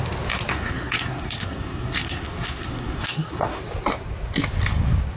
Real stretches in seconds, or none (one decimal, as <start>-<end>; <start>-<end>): 0.0-0.5; 3.6-5.2